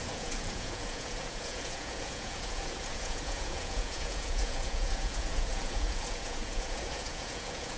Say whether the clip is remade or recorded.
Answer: remade